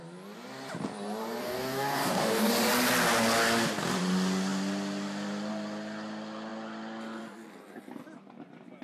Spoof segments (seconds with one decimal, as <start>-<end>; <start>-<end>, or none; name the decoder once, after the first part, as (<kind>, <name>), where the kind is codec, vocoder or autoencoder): 1.4-2.5 (codec, DAC)